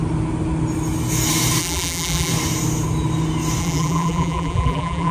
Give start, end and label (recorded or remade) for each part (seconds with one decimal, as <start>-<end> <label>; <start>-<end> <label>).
0.0-1.6 recorded; 1.6-2.3 remade; 2.3-3.6 recorded; 3.6-5.1 remade